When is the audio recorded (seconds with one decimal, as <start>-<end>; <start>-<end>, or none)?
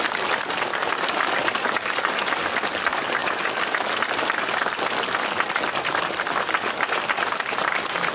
0.0-0.7; 2.4-8.1